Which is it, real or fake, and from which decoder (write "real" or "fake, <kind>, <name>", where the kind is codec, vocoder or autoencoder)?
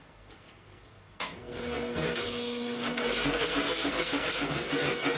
fake, codec, SNAC